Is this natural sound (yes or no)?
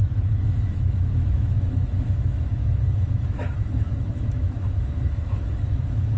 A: no